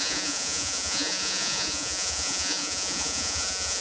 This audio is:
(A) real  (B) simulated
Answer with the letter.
B